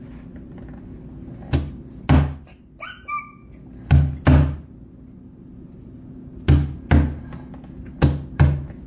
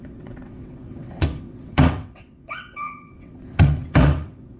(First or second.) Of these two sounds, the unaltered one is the first